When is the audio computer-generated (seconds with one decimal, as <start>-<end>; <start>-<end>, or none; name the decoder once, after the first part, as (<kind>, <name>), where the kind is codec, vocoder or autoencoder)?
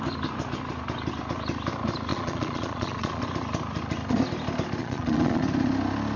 2.1-3.2 (vocoder, Vocos); 4.8-5.4